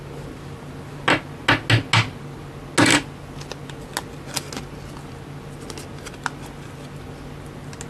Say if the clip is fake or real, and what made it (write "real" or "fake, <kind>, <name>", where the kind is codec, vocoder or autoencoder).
real